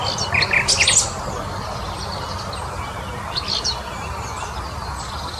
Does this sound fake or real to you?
real